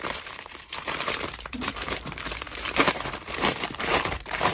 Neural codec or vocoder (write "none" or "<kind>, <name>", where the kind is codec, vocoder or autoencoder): vocoder, BigVGAN v2